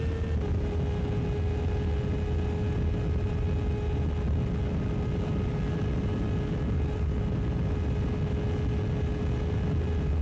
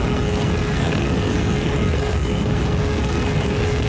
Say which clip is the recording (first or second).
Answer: first